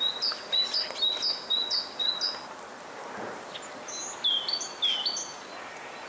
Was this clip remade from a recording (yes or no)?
no